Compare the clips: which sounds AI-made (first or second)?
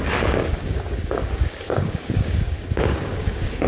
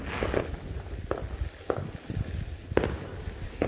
first